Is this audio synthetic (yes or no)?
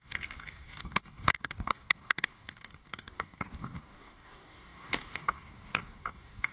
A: yes